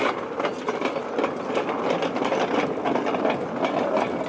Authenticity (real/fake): real